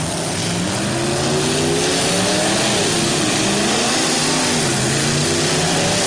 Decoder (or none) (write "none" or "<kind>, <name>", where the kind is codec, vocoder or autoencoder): none